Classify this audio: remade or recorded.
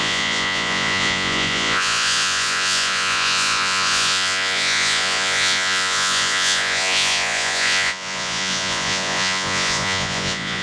remade